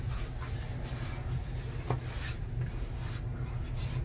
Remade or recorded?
recorded